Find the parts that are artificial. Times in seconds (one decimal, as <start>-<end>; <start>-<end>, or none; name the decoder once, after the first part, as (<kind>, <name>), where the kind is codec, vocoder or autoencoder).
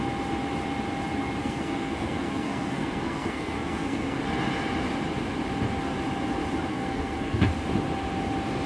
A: 1.4-4.2 (codec, SNAC); 6.7-7.5